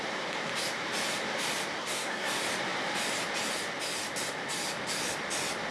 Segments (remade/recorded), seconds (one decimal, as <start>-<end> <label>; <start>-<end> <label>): 0.0-1.8 recorded; 1.8-2.3 remade; 2.3-5.7 recorded